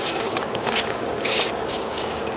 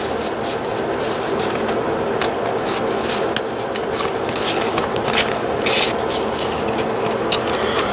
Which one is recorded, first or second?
second